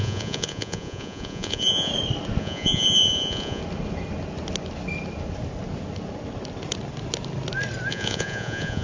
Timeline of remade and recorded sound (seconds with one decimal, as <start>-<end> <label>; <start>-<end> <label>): 0.0-1.9 remade; 1.9-2.4 recorded; 2.4-3.6 remade; 3.6-7.9 recorded; 7.9-8.8 remade